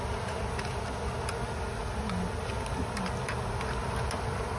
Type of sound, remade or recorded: recorded